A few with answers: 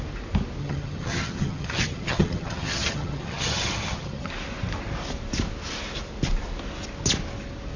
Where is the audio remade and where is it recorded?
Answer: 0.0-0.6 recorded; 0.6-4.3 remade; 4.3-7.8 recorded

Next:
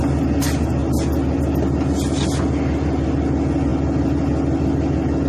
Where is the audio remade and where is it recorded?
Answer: 0.0-5.3 recorded